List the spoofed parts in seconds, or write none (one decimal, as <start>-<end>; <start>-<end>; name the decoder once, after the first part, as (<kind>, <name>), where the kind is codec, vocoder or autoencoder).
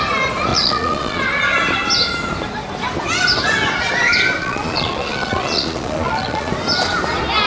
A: 0.5-1.2 (vocoder, Vocos); 4.4-6.5